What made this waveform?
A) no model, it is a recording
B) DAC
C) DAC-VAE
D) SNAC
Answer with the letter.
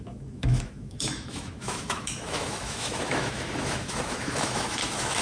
C